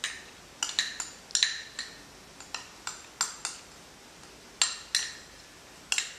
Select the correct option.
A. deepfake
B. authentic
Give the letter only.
B